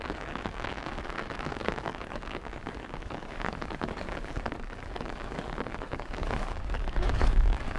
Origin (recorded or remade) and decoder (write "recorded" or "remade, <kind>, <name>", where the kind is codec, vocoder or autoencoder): remade, codec, DAC